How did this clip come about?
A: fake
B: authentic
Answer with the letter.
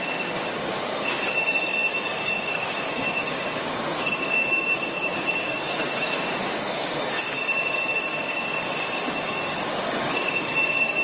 A